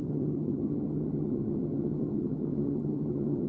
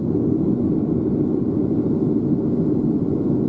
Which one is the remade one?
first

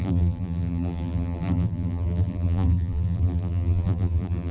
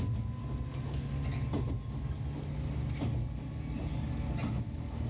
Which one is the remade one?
first